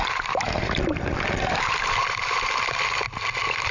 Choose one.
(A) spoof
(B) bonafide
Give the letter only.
B